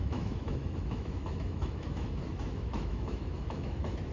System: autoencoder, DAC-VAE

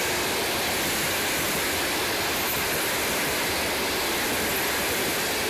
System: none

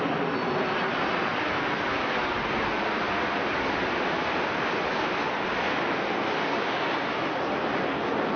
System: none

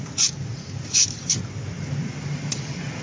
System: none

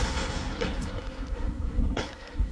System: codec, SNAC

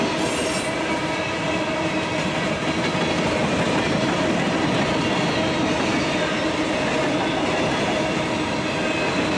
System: none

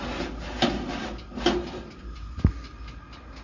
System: none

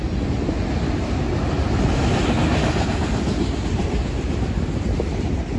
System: none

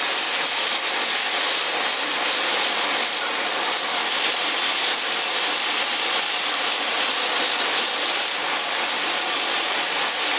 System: none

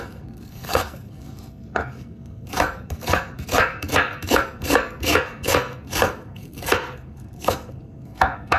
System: codec, SNAC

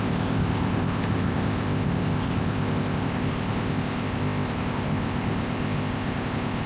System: codec, ZipCodec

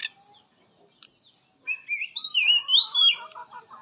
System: none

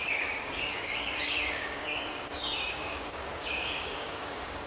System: codec, DAC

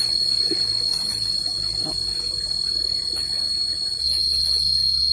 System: none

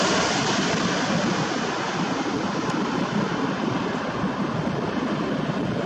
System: none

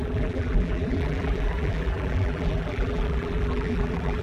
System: vocoder, BigVGAN v2